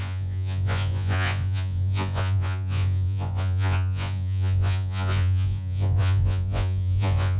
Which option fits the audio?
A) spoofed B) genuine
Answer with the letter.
A